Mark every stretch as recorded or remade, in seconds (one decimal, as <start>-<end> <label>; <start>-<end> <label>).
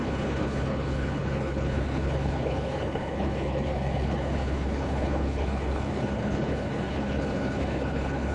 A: 0.0-8.3 remade